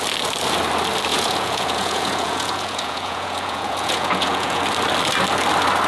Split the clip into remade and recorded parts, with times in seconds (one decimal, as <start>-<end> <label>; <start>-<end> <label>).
0.0-1.1 recorded; 1.1-4.6 remade; 4.6-5.9 recorded